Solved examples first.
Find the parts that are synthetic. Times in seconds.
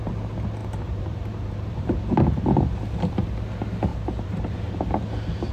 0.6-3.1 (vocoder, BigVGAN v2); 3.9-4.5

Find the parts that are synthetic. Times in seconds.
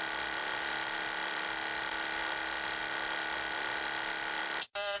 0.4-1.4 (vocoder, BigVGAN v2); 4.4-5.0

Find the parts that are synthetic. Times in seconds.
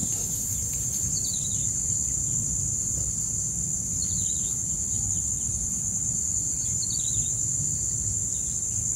0.0-2.9 (vocoder, BigVGAN v2); 3.7-7.0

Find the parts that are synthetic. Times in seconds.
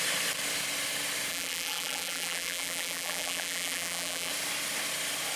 1.3-4.3 (vocoder, BigVGAN v2)